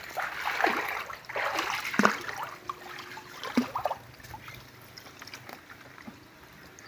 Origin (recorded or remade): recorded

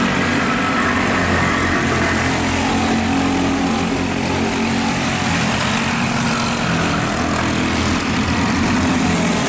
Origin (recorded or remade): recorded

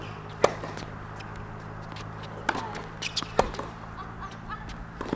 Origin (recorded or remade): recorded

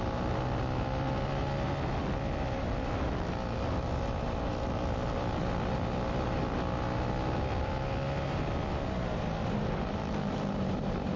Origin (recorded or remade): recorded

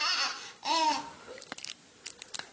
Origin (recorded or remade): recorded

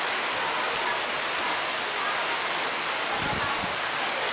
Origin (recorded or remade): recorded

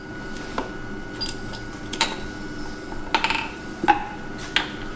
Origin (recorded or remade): recorded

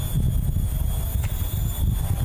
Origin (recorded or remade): recorded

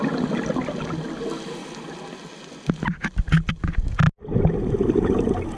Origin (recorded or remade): recorded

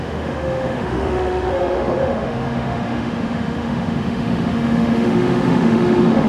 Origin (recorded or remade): remade